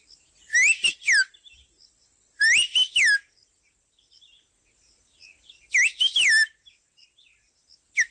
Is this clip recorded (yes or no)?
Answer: yes